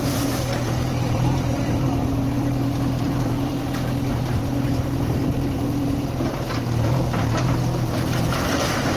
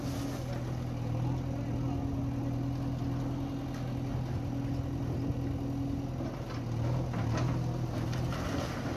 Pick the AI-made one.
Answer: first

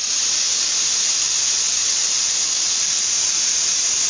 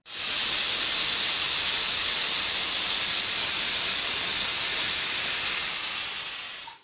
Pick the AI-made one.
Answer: first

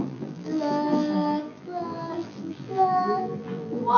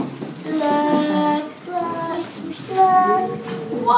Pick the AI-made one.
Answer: first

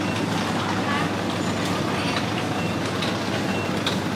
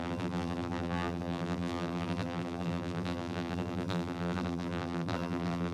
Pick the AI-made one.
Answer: second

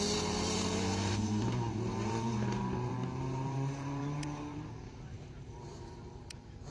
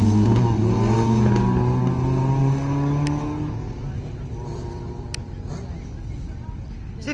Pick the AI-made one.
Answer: first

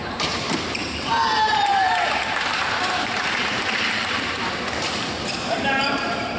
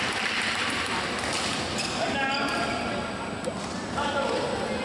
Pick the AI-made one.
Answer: first